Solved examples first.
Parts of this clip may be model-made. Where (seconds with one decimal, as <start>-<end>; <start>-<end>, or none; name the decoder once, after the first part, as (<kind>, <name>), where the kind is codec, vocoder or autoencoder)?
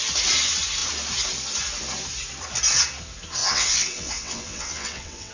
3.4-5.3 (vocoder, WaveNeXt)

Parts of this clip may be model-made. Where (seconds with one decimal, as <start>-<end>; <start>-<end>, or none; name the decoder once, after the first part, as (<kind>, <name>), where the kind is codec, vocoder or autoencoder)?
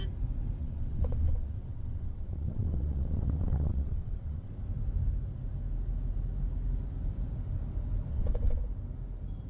0.6-4.5 (vocoder, WaveNeXt); 8.1-8.6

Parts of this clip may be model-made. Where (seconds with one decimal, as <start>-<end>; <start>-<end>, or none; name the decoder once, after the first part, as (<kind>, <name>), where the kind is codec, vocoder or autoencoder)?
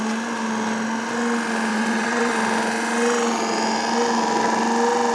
1.7-2.3 (vocoder, WaveNeXt)